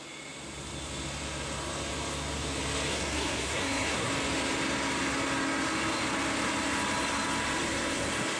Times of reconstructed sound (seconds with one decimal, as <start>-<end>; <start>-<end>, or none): 2.9-4.1